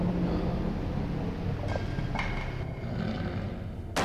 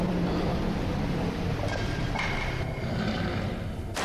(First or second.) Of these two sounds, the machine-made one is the second